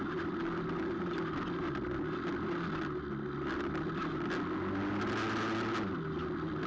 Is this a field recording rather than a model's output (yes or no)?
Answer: yes